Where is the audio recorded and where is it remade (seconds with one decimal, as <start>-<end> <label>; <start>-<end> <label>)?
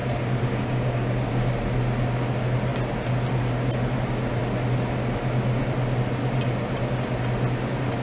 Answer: 0.0-1.3 remade; 1.3-8.0 recorded